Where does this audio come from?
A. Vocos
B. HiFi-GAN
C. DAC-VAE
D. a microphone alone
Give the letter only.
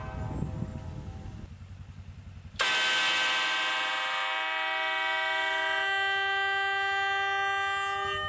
D